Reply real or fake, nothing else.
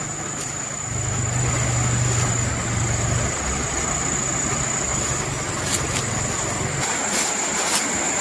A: real